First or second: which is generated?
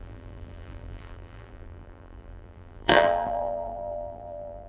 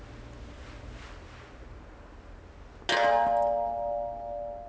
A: first